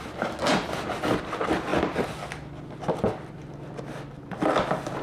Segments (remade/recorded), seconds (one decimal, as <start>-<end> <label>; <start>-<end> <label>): 0.0-5.0 recorded